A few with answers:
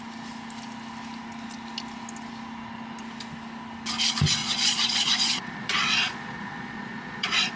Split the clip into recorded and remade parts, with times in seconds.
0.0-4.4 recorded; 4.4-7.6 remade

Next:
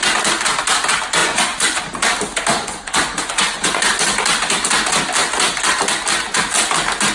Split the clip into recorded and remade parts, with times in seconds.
0.0-1.2 recorded; 1.2-1.8 remade; 1.8-2.5 recorded; 2.5-3.9 remade; 3.9-7.1 recorded

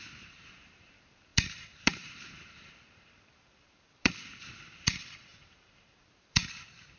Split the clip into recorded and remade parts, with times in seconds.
0.0-7.0 remade

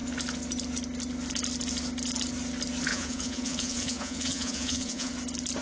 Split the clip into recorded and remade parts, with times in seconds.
0.0-2.9 recorded; 2.9-5.1 remade; 5.1-5.6 recorded